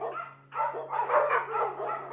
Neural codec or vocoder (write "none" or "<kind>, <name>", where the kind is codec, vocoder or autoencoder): none